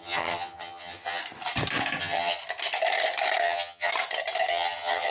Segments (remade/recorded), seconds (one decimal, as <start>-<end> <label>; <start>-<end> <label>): 0.0-1.2 remade; 1.2-2.0 recorded; 2.0-2.4 remade; 2.4-3.4 recorded; 3.4-3.9 remade; 3.9-4.5 recorded; 4.5-5.1 remade